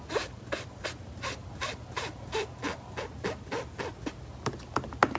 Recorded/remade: recorded